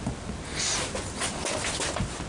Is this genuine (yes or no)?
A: yes